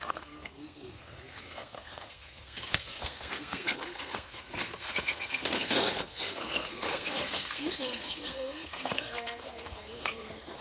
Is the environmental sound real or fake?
fake